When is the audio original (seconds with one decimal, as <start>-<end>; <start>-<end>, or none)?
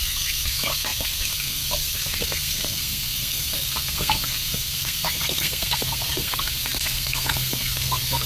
none